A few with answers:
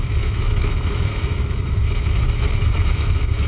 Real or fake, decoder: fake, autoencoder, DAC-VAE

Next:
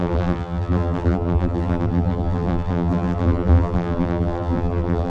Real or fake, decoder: fake, vocoder, BigVGAN v2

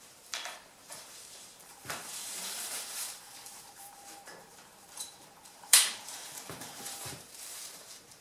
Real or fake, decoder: fake, vocoder, BigVGAN v2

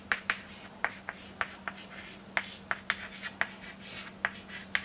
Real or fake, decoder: real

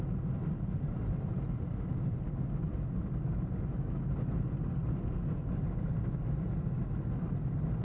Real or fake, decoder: real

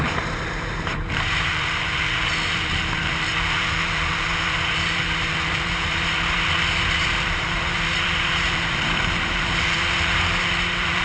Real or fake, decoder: fake, vocoder, BigVGAN v2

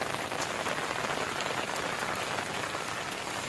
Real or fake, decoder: real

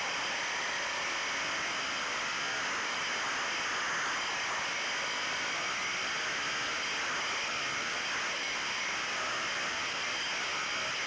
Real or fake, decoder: real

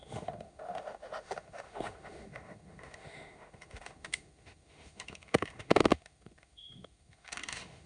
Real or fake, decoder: fake, autoencoder, DAC-VAE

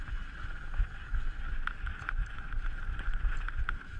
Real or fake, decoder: real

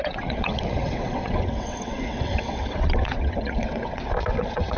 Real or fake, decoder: fake, vocoder, WaveNeXt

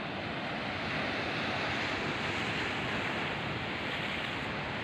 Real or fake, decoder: real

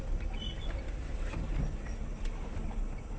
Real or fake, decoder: real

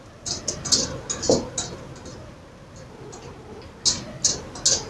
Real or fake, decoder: real